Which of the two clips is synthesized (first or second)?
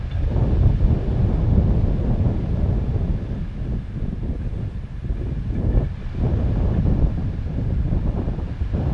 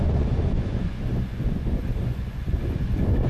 second